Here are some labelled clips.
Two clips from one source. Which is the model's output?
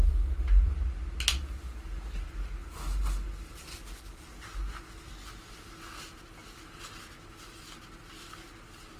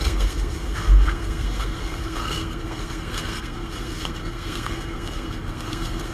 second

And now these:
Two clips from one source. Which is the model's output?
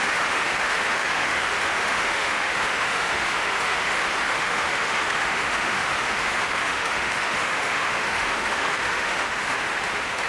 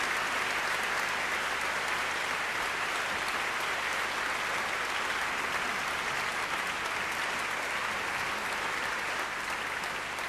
first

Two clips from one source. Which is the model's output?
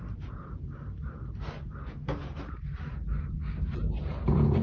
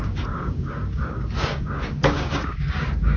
second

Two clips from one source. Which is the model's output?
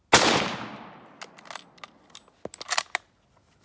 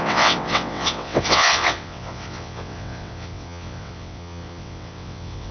second